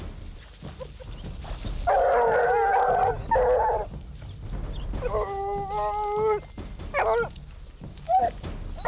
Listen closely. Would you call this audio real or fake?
real